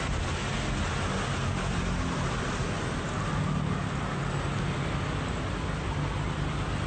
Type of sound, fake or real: real